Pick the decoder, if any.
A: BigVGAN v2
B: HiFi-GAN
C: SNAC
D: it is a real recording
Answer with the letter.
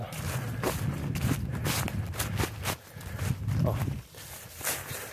D